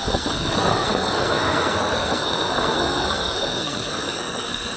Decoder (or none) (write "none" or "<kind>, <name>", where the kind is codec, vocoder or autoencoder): codec, SNAC